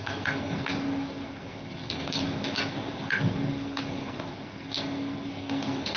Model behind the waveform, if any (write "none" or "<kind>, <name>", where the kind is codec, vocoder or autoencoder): codec, SNAC